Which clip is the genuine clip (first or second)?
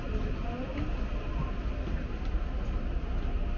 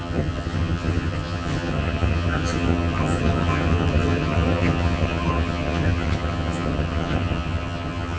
first